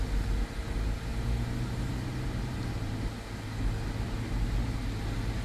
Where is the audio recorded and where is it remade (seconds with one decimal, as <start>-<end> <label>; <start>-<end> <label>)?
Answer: 0.0-5.4 recorded

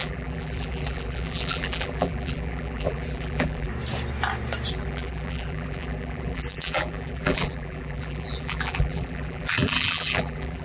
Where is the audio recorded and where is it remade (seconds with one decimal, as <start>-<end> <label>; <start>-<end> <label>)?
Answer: 0.0-3.7 remade; 3.7-4.7 recorded; 4.7-10.6 remade

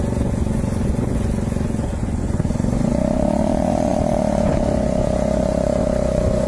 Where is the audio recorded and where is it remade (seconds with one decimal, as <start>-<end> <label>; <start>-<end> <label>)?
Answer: 0.0-6.5 remade

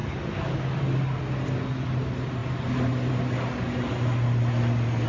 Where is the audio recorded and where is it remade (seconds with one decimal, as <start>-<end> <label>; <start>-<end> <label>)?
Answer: 0.0-5.1 recorded

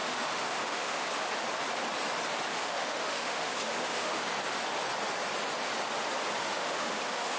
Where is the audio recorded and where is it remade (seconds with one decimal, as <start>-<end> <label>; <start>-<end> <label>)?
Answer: 0.0-1.1 remade; 1.1-2.5 recorded; 2.5-4.2 remade; 4.2-6.4 recorded; 6.4-7.4 remade

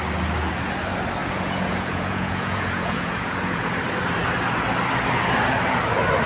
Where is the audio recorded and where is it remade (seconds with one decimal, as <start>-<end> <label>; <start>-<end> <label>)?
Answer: 0.0-1.2 recorded; 1.2-3.7 remade; 3.7-6.3 recorded

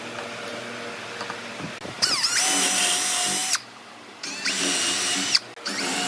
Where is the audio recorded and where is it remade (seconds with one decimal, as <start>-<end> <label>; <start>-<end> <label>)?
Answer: 0.0-6.1 recorded